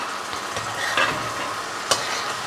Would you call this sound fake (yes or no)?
no